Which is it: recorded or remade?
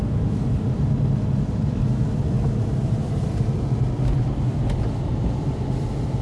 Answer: recorded